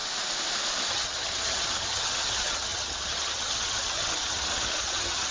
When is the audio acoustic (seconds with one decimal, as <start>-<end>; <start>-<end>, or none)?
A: 0.0-0.9